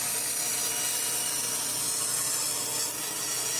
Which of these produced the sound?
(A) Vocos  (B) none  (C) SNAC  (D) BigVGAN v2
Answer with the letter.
B